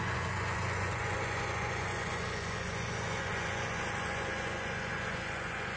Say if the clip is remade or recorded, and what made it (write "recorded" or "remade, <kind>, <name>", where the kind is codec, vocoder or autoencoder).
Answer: remade, vocoder, Vocos